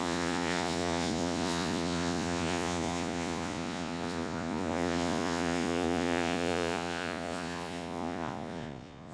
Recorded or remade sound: remade